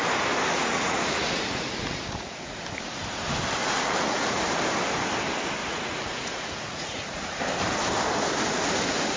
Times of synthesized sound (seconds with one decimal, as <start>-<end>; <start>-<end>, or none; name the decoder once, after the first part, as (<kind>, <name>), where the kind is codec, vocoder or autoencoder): 0.5-2.6 (vocoder, Vocos); 3.6-4.4; 5.6-7.4